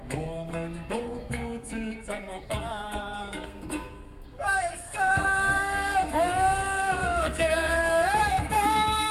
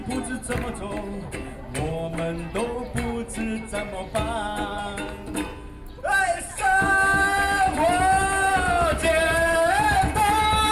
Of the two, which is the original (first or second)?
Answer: second